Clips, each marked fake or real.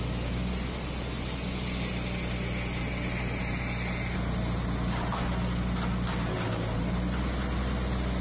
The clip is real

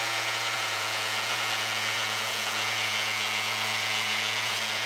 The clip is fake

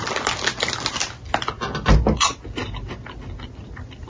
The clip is real